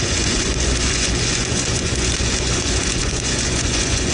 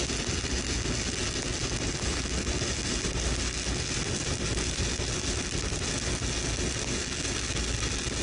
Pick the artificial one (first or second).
first